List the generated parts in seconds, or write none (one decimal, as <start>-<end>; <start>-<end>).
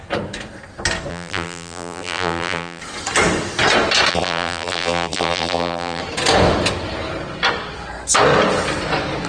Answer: 1.1-2.8; 4.1-6.0